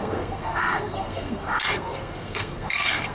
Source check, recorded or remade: remade